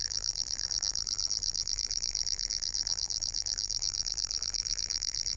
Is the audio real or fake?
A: fake